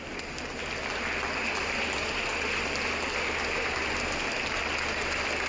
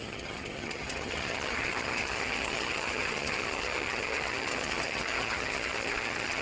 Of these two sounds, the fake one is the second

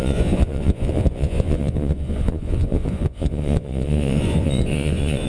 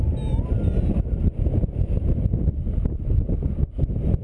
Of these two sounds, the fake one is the first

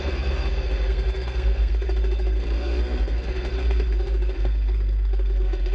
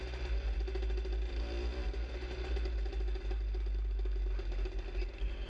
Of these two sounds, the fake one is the first